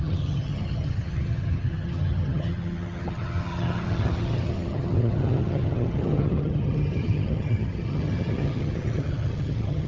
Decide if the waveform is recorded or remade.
remade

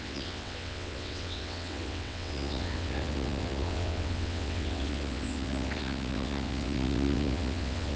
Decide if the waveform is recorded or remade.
remade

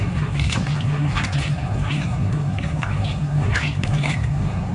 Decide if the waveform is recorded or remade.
remade